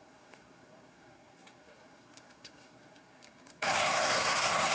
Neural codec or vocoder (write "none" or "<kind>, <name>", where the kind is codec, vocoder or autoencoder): codec, SNAC